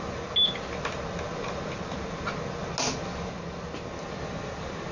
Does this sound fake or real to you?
real